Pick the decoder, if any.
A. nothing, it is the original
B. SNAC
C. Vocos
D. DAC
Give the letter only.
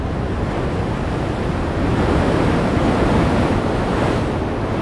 A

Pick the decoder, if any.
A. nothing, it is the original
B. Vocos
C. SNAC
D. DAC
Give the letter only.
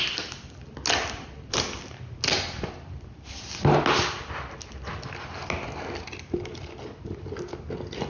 A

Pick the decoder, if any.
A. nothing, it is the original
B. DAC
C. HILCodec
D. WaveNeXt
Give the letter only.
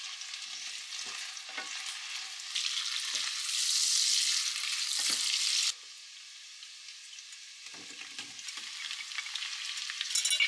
A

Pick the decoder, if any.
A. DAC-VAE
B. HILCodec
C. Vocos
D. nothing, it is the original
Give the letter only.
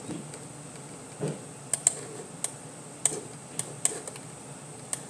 D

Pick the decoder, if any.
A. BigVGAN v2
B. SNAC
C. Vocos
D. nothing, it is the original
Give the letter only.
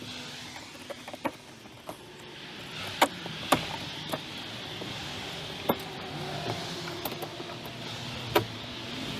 D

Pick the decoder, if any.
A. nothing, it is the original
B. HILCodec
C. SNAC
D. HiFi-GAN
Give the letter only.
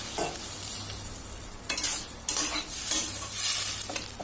A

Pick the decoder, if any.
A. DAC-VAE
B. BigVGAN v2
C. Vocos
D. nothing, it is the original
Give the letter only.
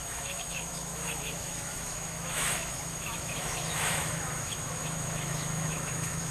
A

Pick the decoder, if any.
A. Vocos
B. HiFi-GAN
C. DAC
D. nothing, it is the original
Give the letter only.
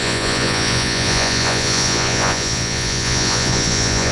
A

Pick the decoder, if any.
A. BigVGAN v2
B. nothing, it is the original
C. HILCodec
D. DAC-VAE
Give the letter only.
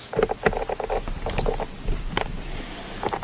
B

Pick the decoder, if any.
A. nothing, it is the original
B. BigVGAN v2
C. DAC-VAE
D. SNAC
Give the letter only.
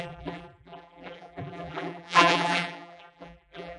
B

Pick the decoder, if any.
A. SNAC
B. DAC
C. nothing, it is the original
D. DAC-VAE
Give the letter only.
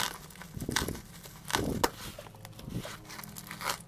C